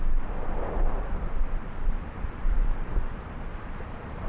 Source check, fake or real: fake